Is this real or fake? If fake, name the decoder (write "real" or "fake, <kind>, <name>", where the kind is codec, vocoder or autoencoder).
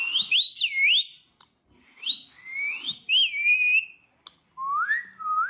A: real